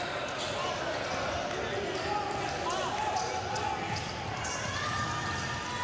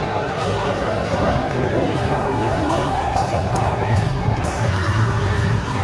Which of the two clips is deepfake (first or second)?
second